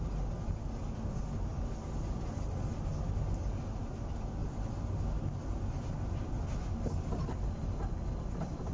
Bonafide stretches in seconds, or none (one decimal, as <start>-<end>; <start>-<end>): 0.0-8.7